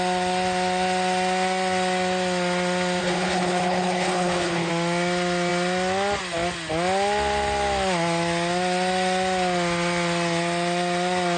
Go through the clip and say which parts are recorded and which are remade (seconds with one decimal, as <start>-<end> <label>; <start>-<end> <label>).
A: 0.0-3.0 recorded; 3.0-4.7 remade; 4.7-11.4 recorded